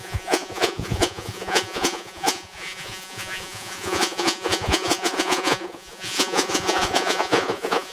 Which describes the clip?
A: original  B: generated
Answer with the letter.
B